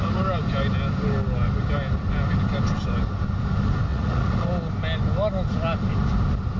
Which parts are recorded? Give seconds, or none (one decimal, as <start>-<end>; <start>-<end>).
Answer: 0.0-3.9; 4.5-6.6